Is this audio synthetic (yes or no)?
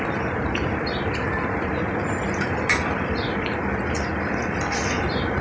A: yes